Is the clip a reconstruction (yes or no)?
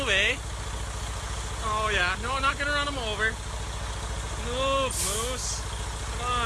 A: no